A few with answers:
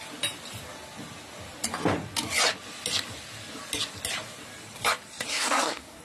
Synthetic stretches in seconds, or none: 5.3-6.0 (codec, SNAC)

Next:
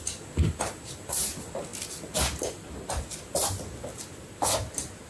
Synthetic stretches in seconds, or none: none

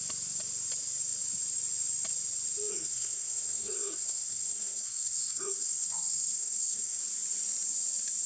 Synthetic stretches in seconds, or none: 2.7-7.0 (codec, SNAC)

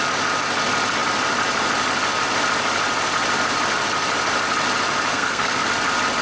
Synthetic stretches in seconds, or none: 5.1-5.7 (codec, SNAC)

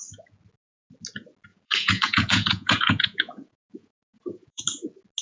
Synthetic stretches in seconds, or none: 1.5-4.6 (vocoder, Vocos)

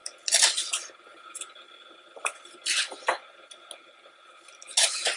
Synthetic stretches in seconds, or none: 0.0-2.5 (vocoder, BigVGAN v2)

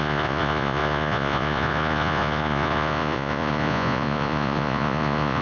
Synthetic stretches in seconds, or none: 0.0-5.4 (vocoder, Vocos)